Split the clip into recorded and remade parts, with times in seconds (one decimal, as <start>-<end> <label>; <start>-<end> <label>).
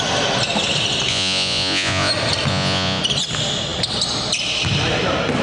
0.0-1.1 recorded; 1.1-2.1 remade; 2.1-2.5 recorded; 2.5-3.0 remade; 3.0-5.4 recorded